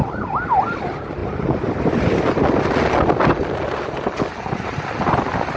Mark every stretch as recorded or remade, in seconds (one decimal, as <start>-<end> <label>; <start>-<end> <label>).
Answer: 0.0-5.6 recorded